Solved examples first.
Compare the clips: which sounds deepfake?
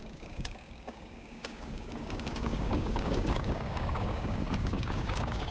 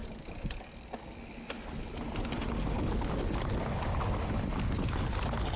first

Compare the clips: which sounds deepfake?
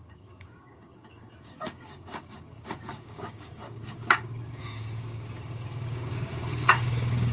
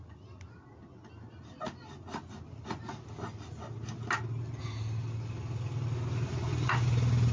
first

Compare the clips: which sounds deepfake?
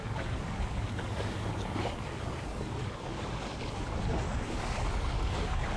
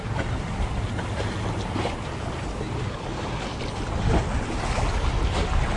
first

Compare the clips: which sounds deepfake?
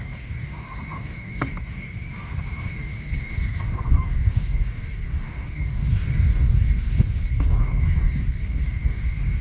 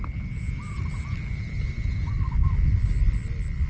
first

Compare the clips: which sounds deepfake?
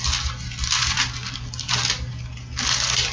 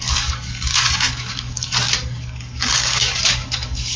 second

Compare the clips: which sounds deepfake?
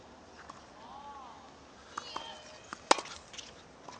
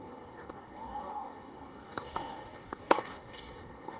second